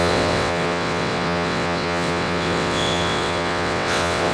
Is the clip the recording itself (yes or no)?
no